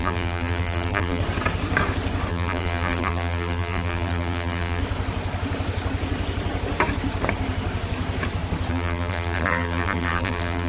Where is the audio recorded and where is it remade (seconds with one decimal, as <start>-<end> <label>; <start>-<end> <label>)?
0.0-1.2 remade; 1.2-2.3 recorded; 2.3-4.8 remade; 4.8-8.7 recorded; 8.7-10.7 remade